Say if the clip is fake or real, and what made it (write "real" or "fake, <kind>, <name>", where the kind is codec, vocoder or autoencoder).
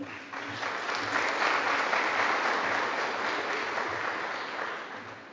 real